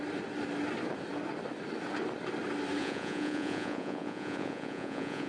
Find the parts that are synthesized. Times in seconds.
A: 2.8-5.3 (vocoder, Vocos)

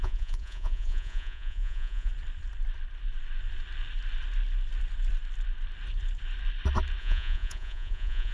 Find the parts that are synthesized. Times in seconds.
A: 0.0-2.1 (vocoder, Vocos); 7.0-8.3

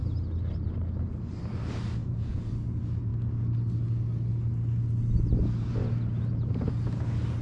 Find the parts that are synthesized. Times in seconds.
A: 2.0-2.5 (vocoder, Vocos)

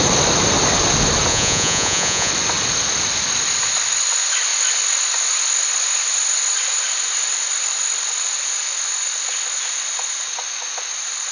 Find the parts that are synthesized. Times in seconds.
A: 1.3-2.3 (vocoder, Vocos)

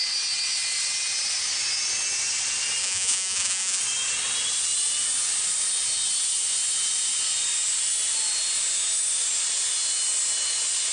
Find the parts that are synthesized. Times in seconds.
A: 2.8-3.8 (vocoder, Vocos)